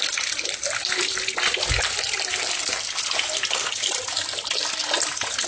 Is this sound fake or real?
real